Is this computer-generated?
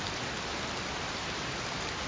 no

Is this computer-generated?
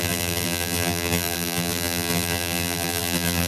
yes